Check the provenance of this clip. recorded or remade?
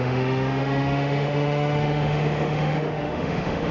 remade